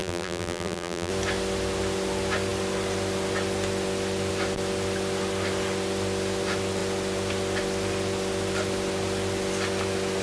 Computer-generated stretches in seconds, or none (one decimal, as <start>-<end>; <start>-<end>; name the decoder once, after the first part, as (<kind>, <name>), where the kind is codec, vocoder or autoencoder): 0.0-1.1 (vocoder, BigVGAN v2)